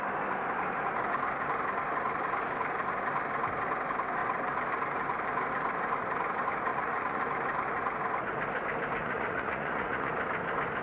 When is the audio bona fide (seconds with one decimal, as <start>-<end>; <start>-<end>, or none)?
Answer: 0.0-6.7; 7.2-9.0; 10.1-10.8